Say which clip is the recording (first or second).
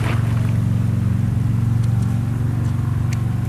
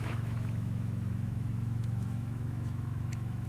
first